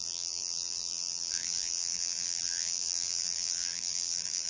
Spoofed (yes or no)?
yes